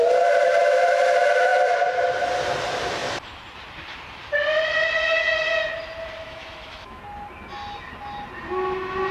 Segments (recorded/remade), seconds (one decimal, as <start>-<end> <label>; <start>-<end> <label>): 0.0-6.2 recorded; 6.2-7.0 remade; 7.0-9.1 recorded